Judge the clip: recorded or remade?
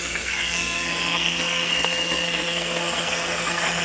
remade